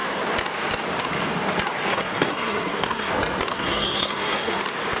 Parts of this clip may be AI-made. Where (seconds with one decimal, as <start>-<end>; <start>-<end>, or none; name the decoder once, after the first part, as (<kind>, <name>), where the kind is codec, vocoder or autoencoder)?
1.9-3.1 (codec, SNAC); 3.5-4.6